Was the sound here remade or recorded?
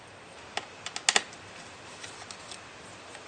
recorded